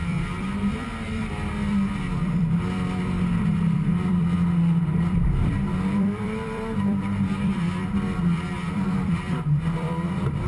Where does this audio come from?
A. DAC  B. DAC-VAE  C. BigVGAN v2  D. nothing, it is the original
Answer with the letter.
C